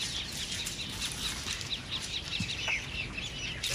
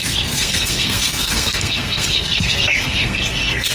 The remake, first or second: second